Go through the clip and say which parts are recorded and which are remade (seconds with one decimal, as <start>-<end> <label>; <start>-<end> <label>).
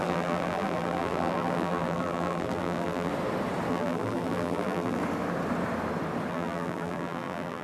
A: 0.0-3.1 remade; 3.1-3.7 recorded; 3.7-5.0 remade; 5.0-6.3 recorded; 6.3-7.6 remade